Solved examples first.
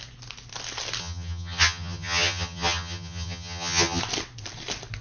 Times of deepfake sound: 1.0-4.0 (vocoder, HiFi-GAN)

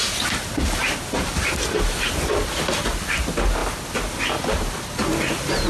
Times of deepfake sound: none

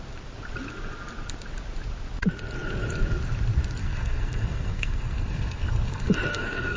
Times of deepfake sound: 3.8-6.8 (codec, SNAC)

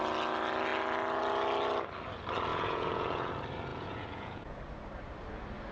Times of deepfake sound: 2.5-3.3 (vocoder, Vocos); 3.7-4.6

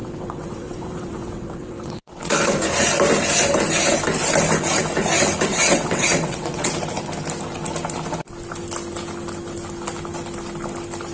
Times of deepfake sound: 0.0-2.5 (vocoder, WaveNeXt); 5.5-6.7

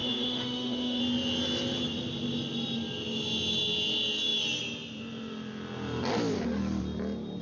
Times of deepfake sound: 0.0-1.0 (autoencoder, DAC-VAE)